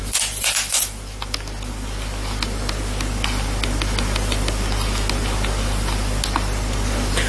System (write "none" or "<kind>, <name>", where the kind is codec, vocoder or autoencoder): none